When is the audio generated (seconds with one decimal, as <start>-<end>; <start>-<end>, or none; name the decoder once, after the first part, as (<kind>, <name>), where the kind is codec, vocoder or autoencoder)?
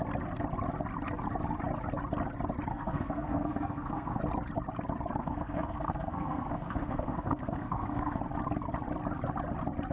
2.7-4.2 (codec, SNAC); 5.2-8.2